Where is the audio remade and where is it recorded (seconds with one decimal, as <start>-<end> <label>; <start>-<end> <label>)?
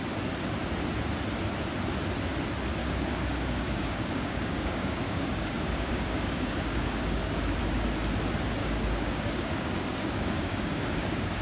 0.0-2.8 recorded; 2.8-7.6 remade; 7.6-8.6 recorded; 8.6-11.4 remade